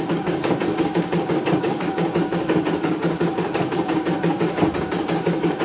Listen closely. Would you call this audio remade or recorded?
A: remade